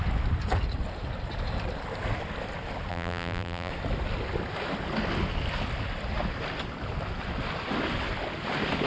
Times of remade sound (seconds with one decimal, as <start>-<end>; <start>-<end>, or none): 2.9-3.7